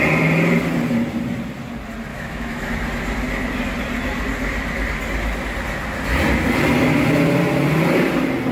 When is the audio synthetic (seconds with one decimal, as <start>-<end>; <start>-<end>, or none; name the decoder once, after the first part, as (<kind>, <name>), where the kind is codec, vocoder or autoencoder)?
2.1-2.7 (autoencoder, DAC-VAE)